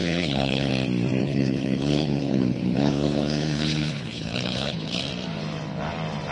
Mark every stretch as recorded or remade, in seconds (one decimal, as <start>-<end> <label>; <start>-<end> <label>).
0.0-0.7 remade; 0.7-1.2 recorded; 1.2-5.0 remade; 5.0-6.3 recorded

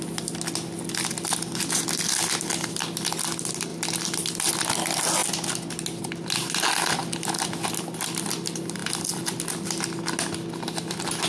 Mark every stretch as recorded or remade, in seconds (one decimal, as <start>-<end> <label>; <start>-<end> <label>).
0.0-3.7 recorded; 3.7-4.5 remade; 4.5-11.3 recorded

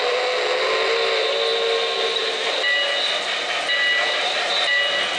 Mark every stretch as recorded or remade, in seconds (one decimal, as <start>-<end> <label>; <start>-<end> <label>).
0.0-5.2 recorded